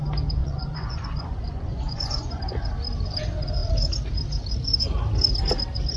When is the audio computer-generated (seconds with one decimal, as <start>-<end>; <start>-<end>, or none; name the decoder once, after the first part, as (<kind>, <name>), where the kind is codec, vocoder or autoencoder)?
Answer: 0.4-2.4 (vocoder, Vocos)